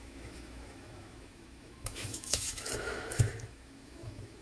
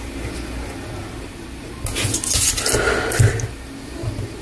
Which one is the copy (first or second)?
first